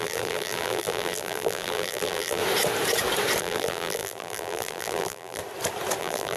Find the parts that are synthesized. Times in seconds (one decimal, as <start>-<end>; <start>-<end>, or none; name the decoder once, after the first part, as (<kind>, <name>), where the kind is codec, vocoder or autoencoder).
0.0-2.4 (vocoder, BigVGAN v2); 3.4-5.4; 6.0-6.4